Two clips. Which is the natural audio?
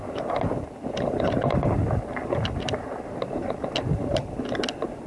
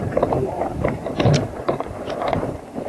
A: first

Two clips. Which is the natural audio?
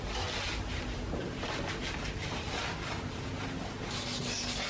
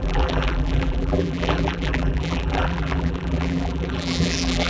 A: first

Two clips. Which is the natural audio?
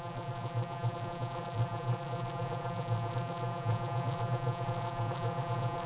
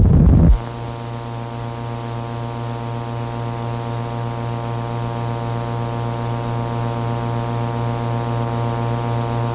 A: second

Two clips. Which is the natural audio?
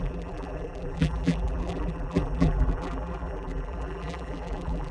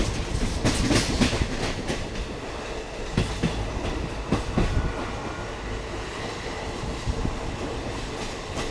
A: second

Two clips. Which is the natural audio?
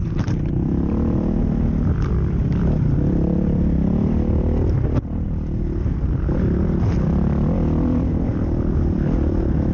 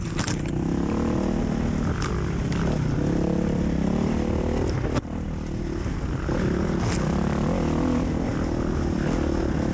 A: second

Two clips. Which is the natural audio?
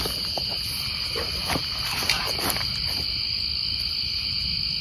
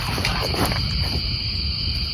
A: first